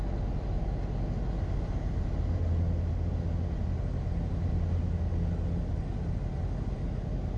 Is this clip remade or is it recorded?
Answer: recorded